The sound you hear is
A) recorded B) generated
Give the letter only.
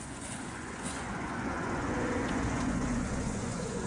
B